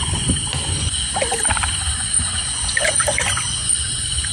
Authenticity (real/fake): fake